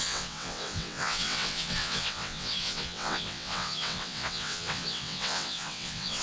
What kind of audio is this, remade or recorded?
remade